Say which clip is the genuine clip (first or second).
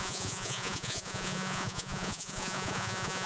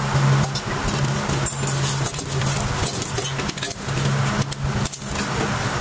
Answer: second